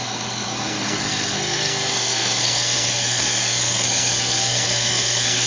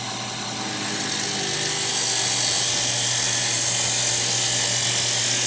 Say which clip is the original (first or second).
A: second